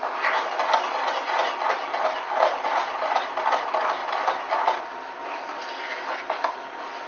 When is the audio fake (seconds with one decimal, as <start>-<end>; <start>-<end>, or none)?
none